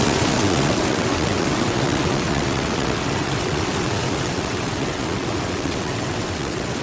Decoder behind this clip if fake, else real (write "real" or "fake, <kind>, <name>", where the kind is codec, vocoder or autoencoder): fake, vocoder, WaveNeXt